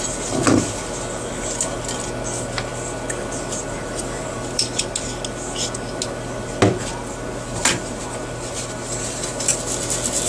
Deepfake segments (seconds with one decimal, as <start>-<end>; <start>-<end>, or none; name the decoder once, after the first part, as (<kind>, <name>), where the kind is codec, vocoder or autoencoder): none